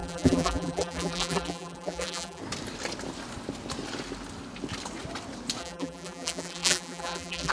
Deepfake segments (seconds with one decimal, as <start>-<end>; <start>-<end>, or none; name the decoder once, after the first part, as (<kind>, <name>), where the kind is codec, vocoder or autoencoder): 0.0-2.4 (vocoder, BigVGAN v2); 5.6-7.5